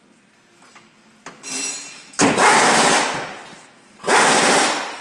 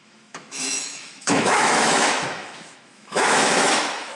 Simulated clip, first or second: second